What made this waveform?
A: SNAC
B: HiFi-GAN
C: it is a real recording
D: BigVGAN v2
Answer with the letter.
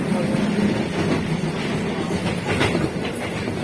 C